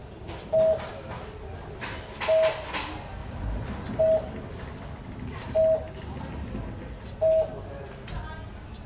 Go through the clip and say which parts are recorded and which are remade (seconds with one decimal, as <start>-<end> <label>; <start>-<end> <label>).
0.0-8.9 recorded